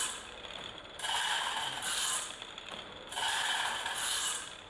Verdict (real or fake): fake